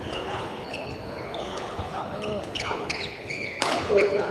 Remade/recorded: remade